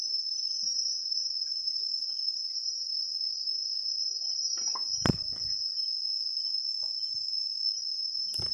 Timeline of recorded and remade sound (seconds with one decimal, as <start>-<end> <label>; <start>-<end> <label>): 0.0-3.6 remade; 3.6-7.9 recorded; 7.9-8.5 remade